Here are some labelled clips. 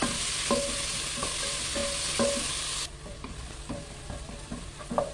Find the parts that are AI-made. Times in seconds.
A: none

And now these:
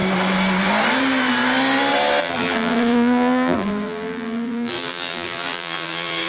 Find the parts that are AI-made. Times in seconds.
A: 2.2-6.3 (vocoder, BigVGAN v2)

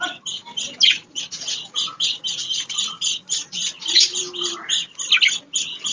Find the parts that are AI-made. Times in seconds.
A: 2.5-3.8 (vocoder, BigVGAN v2); 4.2-5.0

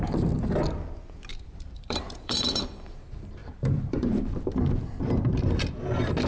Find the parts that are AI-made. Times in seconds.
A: 1.3-2.6 (vocoder, BigVGAN v2); 3.4-4.5

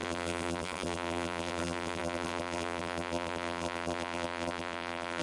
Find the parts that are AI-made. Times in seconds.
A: 0.0-5.2 (vocoder, BigVGAN v2)